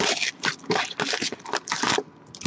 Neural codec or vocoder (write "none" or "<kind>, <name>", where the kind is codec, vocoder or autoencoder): none